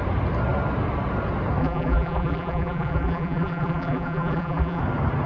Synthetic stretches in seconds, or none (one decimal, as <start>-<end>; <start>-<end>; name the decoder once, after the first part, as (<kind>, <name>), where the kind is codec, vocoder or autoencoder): 1.6-4.8 (vocoder, BigVGAN v2)